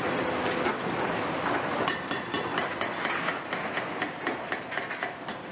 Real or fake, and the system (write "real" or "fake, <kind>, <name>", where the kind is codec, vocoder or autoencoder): real